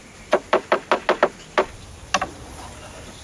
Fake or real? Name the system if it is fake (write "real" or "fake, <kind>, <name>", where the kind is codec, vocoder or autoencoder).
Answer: real